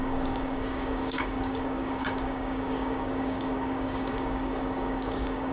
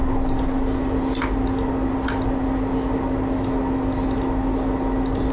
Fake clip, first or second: first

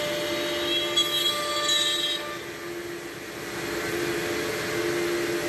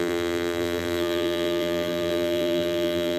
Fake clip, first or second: second